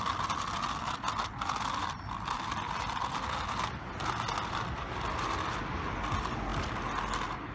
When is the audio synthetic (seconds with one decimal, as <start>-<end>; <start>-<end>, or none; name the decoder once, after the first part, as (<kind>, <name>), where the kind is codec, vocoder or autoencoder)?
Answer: none